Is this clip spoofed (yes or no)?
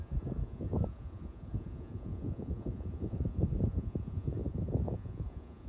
yes